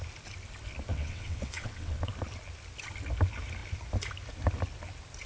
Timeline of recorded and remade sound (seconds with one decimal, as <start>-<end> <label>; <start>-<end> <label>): 0.0-0.9 recorded; 0.9-2.1 remade; 2.1-5.3 recorded

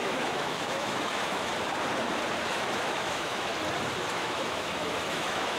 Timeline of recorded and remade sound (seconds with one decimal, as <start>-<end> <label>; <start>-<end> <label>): 0.0-1.5 remade; 1.5-2.5 recorded; 2.5-3.5 remade; 3.5-4.1 recorded; 4.1-5.6 remade

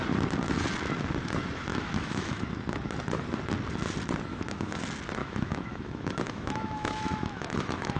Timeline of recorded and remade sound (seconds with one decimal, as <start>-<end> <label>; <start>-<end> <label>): 0.0-1.7 recorded; 1.7-2.5 remade; 2.5-4.3 recorded; 4.3-4.8 remade; 4.8-5.2 recorded; 5.2-8.0 remade

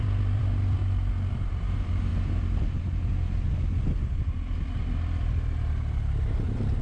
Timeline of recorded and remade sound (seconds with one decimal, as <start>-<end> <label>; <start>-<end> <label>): 0.0-0.8 remade; 0.8-1.3 recorded; 1.3-2.1 remade; 2.1-3.9 recorded; 3.9-6.8 remade

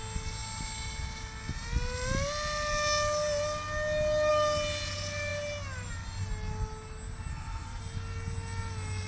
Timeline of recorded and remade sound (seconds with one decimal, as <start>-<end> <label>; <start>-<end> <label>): 0.0-7.3 recorded; 7.3-7.8 remade; 7.8-9.1 recorded

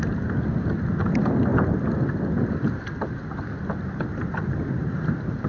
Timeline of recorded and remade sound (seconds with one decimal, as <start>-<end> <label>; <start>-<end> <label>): 0.0-5.5 recorded